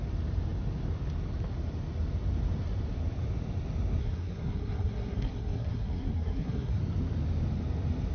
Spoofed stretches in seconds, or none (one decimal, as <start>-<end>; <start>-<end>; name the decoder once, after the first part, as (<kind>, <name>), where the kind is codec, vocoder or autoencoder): 4.0-6.8 (codec, SNAC)